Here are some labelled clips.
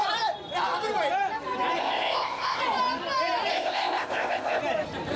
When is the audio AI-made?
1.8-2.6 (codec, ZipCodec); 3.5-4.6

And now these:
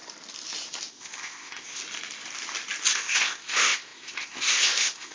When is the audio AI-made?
0.9-1.8 (codec, ZipCodec); 2.9-5.1

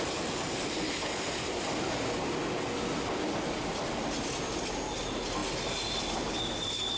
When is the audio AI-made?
none